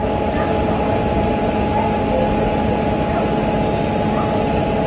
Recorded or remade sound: recorded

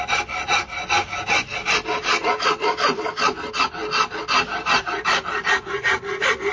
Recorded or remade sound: recorded